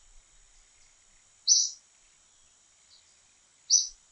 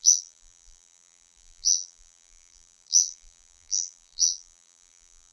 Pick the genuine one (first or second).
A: first